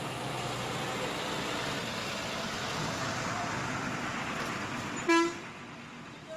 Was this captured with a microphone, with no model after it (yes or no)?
yes